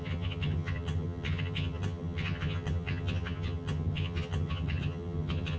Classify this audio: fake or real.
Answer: fake